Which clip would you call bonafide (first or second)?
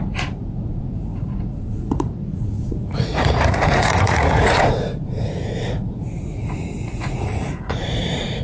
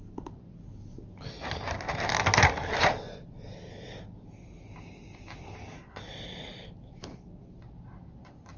second